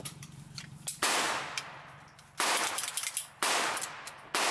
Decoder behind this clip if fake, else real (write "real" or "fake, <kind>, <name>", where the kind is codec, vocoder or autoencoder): real